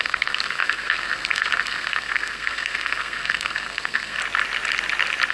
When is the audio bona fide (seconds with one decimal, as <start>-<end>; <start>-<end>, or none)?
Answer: 4.2-5.3